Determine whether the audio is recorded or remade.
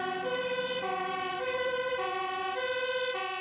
remade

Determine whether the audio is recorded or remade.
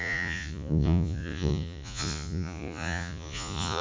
remade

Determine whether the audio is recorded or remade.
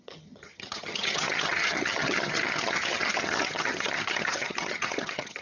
remade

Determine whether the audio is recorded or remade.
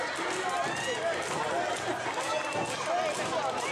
recorded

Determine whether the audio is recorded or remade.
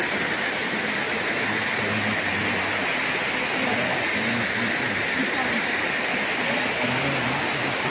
recorded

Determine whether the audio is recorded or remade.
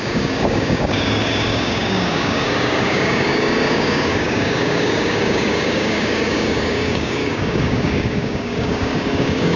remade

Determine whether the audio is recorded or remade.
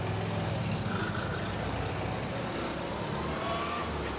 recorded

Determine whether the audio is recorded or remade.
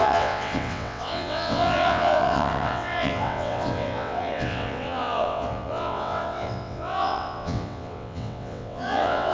remade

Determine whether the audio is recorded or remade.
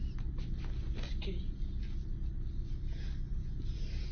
recorded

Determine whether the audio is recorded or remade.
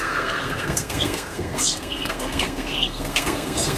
remade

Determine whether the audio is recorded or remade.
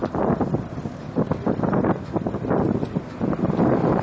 recorded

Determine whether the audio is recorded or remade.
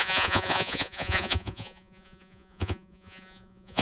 remade